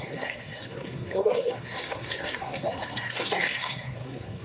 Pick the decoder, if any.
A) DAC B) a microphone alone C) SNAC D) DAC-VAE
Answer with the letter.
C